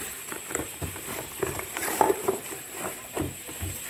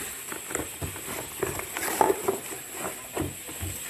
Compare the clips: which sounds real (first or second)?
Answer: second